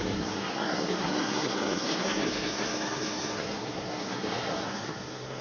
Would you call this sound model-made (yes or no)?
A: yes